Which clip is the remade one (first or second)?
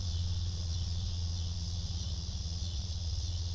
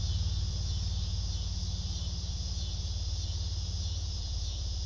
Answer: first